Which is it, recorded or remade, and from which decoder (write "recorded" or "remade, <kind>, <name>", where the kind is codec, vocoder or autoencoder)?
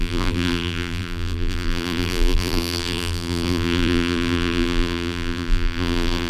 remade, vocoder, BigVGAN v2